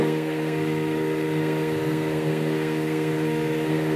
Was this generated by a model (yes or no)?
yes